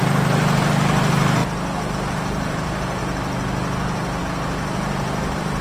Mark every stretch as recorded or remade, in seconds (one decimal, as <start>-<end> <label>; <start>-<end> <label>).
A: 0.0-1.4 remade; 1.4-1.9 recorded; 1.9-3.0 remade; 3.0-4.2 recorded; 4.2-5.6 remade